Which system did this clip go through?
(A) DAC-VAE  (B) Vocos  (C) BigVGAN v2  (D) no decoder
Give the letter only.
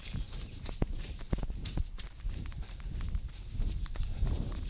C